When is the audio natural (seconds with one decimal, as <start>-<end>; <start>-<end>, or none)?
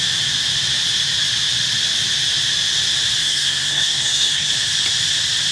0.0-3.2; 4.5-5.5